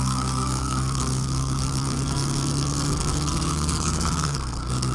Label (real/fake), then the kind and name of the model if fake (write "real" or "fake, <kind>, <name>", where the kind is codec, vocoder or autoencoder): fake, codec, SNAC